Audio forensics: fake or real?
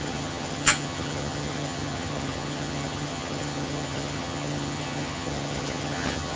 fake